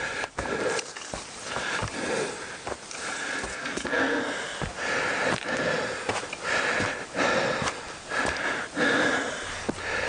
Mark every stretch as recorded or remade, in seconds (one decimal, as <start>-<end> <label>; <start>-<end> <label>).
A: 0.0-3.5 recorded; 3.5-4.2 remade; 4.2-10.1 recorded